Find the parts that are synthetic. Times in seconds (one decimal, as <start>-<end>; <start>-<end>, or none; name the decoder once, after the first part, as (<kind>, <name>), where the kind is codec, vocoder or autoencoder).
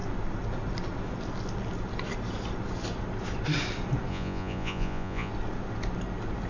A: 4.1-5.3 (vocoder, Vocos)